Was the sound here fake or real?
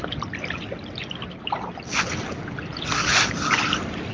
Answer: real